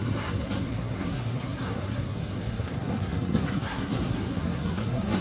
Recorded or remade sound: remade